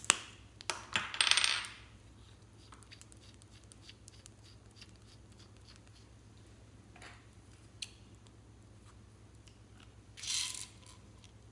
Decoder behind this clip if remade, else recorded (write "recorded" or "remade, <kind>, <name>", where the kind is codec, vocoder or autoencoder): recorded